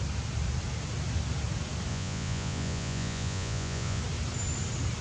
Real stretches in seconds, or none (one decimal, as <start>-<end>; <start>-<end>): 0.0-1.9; 4.0-5.0

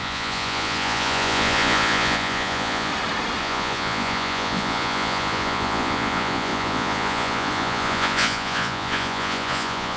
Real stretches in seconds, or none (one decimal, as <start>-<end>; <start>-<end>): 2.9-3.4

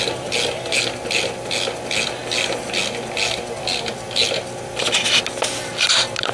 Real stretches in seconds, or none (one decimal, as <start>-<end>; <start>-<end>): 0.0-6.3